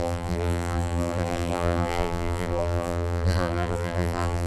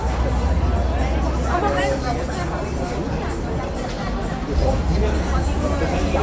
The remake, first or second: first